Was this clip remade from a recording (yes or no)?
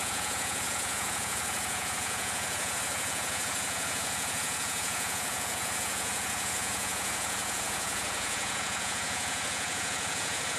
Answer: yes